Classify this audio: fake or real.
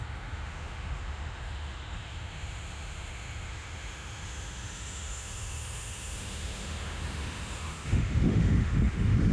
fake